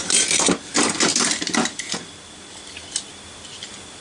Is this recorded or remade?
recorded